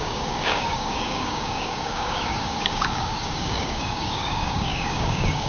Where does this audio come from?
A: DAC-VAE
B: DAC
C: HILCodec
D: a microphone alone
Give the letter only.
B